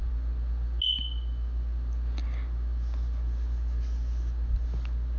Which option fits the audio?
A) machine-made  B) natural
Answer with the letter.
B